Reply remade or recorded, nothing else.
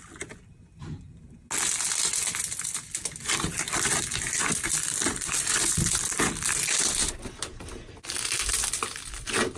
recorded